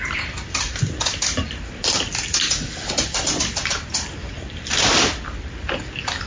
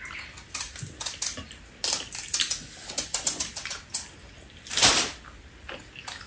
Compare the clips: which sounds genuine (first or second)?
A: second